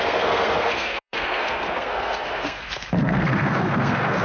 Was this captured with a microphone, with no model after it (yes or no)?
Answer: no